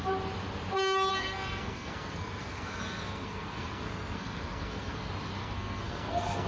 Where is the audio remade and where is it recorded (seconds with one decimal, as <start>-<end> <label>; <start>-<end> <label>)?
0.0-1.1 recorded; 1.1-5.0 remade; 5.0-5.4 recorded; 5.4-6.5 remade